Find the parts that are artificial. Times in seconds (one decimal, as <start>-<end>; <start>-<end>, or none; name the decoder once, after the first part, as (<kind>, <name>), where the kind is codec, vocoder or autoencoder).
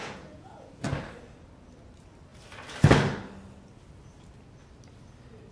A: 0.0-0.7 (vocoder, Vocos)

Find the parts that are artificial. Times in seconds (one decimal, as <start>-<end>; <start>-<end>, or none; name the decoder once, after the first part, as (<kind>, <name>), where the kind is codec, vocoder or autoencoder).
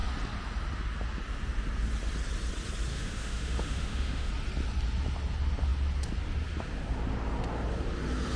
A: 2.9-4.3 (autoencoder, DAC-VAE)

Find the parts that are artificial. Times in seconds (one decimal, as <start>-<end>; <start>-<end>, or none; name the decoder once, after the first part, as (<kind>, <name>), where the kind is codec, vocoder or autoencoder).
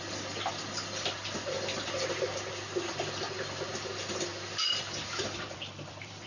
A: 4.3-6.3 (vocoder, BigVGAN v2)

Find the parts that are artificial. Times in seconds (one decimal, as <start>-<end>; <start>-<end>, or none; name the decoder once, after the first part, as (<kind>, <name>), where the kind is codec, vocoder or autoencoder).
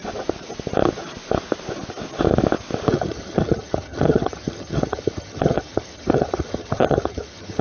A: 2.9-7.6 (vocoder, HiFi-GAN)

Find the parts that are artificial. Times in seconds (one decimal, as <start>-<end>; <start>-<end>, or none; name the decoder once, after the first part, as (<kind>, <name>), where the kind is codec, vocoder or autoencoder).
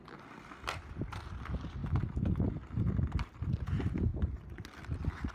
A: none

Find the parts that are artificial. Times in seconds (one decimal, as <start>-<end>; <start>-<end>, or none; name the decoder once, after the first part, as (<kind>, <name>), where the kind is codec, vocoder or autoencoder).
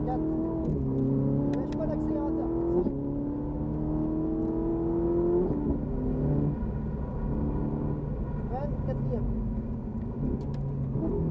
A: none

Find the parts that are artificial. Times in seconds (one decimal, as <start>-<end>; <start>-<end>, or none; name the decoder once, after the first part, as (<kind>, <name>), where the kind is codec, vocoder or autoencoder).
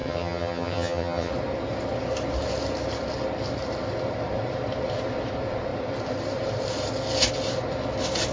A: 0.0-1.3 (vocoder, HiFi-GAN)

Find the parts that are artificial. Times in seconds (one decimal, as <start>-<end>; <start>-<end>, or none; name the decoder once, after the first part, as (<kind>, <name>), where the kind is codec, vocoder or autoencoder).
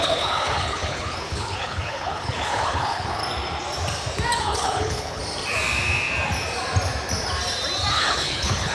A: 0.0-3.2 (codec, HILCodec); 4.4-5.2; 7.9-8.7